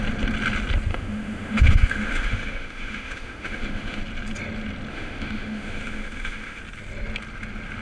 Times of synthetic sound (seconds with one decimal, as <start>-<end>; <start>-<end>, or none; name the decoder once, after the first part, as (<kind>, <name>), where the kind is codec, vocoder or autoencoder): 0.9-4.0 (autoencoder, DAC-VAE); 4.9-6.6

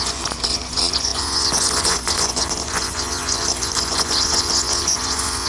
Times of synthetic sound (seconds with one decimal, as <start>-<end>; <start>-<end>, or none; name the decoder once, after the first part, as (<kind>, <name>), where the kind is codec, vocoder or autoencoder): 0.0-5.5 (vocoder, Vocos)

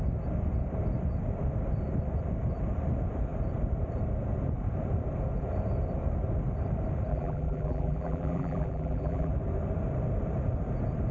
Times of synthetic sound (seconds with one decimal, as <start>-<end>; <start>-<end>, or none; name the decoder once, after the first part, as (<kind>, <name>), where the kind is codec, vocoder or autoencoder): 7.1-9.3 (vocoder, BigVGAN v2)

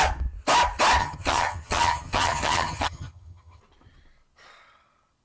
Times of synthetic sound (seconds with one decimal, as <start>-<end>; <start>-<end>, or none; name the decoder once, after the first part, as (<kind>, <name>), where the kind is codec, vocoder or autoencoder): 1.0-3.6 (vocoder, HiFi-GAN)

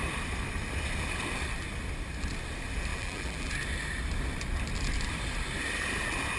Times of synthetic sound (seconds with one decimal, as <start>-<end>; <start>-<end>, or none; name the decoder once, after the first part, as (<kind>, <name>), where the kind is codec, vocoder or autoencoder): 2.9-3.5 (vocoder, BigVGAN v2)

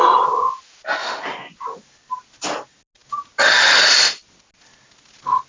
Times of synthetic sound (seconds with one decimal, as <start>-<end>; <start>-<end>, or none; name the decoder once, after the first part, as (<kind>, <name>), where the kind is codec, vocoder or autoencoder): none

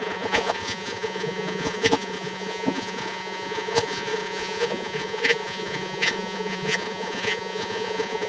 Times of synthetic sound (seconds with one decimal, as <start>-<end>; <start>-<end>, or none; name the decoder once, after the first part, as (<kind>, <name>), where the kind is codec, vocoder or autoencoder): 0.0-8.3 (vocoder, Vocos)

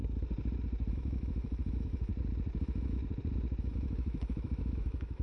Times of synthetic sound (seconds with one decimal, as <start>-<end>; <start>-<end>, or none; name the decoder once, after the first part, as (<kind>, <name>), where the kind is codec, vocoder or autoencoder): 0.9-2.1 (autoencoder, DAC-VAE); 2.6-3.0; 3.6-5.2